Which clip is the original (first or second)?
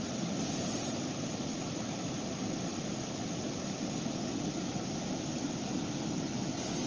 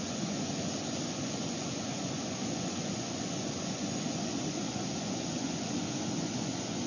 first